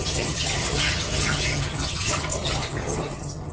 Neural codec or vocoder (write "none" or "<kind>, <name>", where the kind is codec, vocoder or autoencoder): vocoder, HiFi-GAN